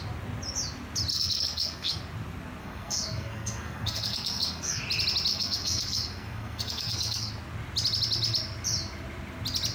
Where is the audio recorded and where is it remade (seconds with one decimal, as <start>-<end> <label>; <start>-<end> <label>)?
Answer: 0.0-1.1 recorded; 1.1-2.0 remade; 2.0-2.6 recorded; 2.6-4.8 remade; 4.8-5.3 recorded; 5.3-7.3 remade; 7.3-9.7 recorded